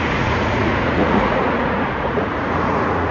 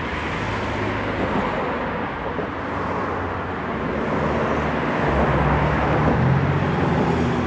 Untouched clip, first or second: second